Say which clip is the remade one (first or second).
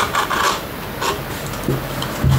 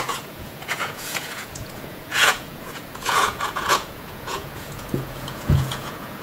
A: second